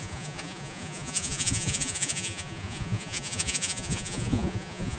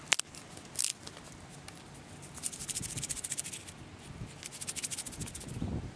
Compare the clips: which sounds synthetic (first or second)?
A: first